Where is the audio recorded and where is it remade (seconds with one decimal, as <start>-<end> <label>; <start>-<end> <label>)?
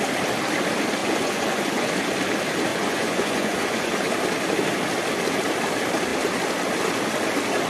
0.0-1.0 recorded; 1.0-1.9 remade; 1.9-2.7 recorded; 2.7-3.9 remade; 3.9-7.7 recorded